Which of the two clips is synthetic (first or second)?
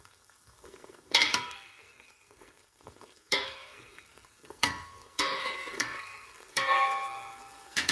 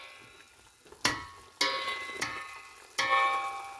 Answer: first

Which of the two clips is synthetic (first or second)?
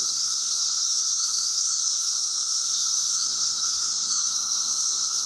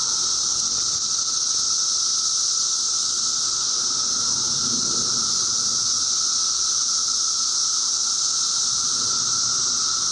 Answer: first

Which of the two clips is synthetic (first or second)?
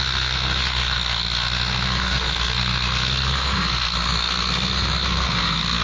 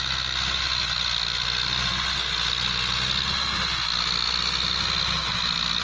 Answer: first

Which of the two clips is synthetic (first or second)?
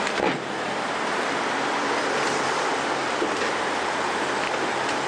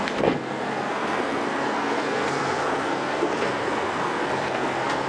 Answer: second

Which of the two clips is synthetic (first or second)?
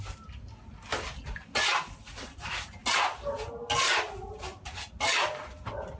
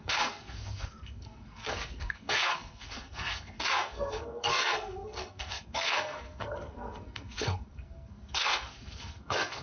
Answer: second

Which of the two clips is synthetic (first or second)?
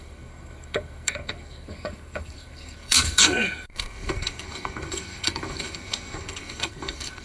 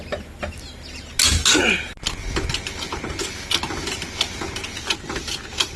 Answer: first